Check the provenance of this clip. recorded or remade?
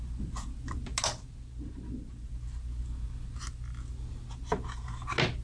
recorded